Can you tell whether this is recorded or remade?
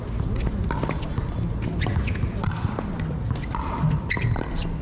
recorded